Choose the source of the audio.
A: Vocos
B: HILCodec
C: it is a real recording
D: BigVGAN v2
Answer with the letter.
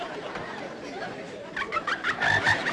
D